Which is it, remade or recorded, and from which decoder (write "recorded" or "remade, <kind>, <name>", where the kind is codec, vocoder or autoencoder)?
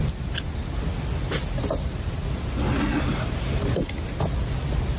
recorded